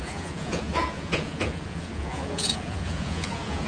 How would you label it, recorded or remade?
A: remade